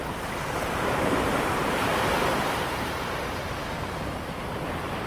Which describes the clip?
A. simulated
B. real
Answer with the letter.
A